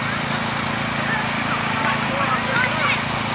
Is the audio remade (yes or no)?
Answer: no